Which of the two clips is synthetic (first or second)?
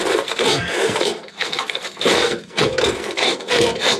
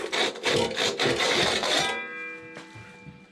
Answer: first